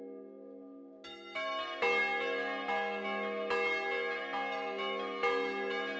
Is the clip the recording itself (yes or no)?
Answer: yes